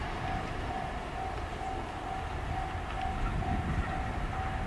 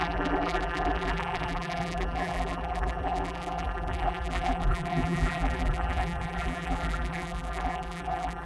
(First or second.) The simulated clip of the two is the second